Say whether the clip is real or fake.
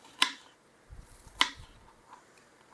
fake